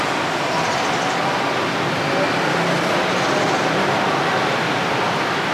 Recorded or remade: recorded